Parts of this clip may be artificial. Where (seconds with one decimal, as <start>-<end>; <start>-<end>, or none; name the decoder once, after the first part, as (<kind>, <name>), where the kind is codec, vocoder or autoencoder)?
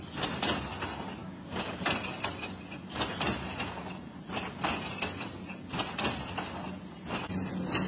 1.2-1.8 (codec, DAC)